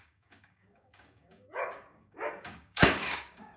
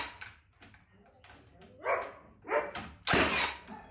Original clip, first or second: second